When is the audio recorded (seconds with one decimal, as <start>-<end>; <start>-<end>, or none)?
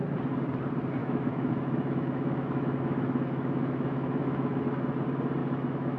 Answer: 0.0-1.0; 4.6-5.4